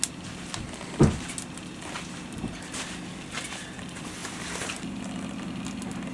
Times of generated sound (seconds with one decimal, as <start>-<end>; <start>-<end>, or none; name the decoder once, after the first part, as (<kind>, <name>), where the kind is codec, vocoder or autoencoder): none